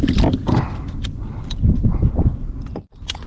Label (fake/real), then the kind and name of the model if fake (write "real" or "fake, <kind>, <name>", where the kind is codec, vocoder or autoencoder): real